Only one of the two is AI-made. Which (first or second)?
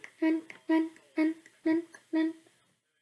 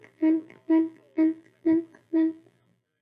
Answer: second